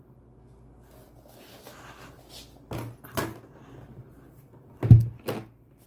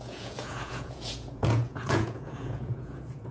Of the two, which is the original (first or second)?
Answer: first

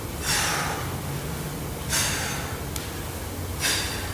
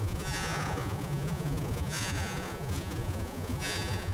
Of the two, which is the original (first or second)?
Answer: first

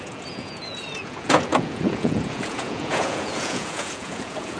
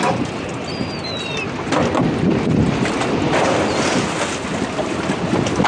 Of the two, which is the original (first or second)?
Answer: second